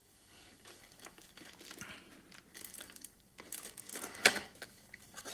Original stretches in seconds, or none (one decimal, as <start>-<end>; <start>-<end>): 1.6-2.5